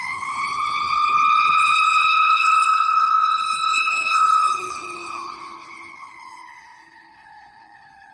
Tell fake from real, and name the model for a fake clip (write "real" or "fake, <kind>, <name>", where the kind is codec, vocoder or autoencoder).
fake, codec, HILCodec